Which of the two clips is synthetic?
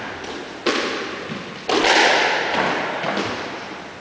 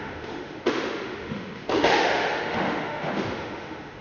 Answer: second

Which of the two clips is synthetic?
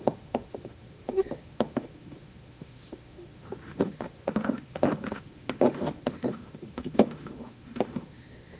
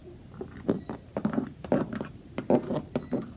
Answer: first